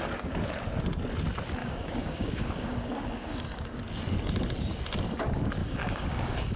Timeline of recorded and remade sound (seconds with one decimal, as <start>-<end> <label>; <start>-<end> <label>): 0.0-1.6 recorded; 1.6-3.8 remade; 3.8-5.6 recorded; 5.6-6.6 remade